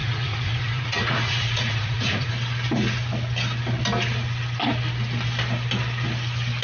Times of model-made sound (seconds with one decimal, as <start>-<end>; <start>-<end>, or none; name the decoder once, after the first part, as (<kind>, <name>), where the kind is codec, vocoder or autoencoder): 0.0-2.3 (vocoder, Vocos)